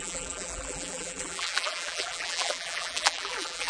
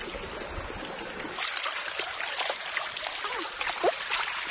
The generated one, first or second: first